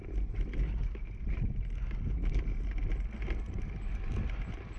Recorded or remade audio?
recorded